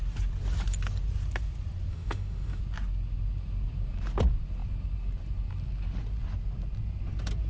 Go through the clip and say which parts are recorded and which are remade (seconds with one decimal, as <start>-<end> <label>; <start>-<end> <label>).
0.0-1.9 recorded; 1.9-2.6 remade; 2.6-7.5 recorded